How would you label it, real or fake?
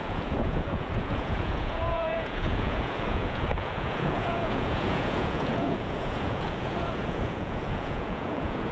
fake